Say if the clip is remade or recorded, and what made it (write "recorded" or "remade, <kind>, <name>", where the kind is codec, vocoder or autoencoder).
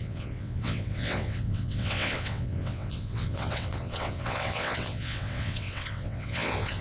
remade, vocoder, WaveNeXt